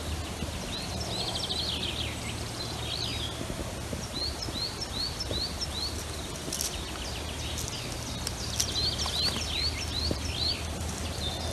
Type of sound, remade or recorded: recorded